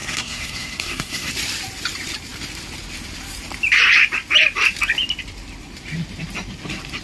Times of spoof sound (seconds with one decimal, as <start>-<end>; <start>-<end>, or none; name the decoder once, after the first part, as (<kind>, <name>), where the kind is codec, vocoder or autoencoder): 0.0-1.3 (codec, SNAC)